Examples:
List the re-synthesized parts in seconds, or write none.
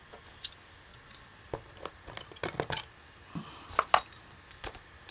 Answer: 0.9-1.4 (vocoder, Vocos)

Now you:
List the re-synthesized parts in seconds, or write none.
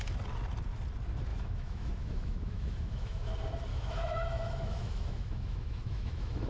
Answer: 1.3-3.3 (autoencoder, DAC-VAE); 3.7-6.5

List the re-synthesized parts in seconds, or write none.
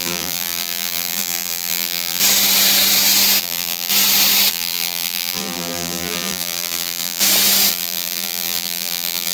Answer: 0.0-2.2 (vocoder, BigVGAN v2); 3.4-3.9; 4.5-7.2; 7.7-9.3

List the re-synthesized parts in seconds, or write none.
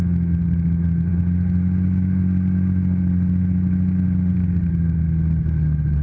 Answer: none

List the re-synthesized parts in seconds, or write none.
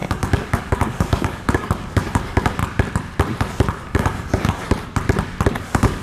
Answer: 0.0-2.6 (codec, DAC); 3.8-4.6; 5.6-6.0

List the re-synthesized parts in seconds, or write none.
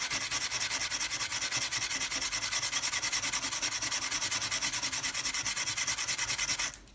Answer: none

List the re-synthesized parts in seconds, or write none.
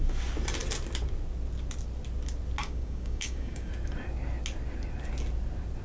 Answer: 2.6-3.7 (codec, DAC)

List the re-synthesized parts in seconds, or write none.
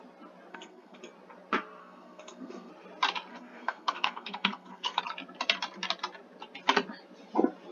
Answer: 0.5-1.0 (codec, SNAC); 1.8-2.7; 3.3-5.0